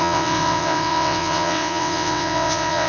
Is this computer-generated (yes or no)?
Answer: yes